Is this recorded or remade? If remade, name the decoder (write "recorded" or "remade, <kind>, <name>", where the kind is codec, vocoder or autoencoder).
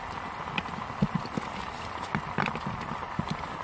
remade, vocoder, BigVGAN v2